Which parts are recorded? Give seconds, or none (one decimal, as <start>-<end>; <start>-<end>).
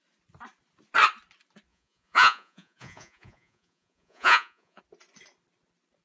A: 0.0-1.7; 4.8-6.0